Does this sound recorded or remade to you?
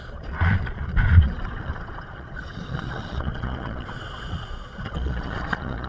remade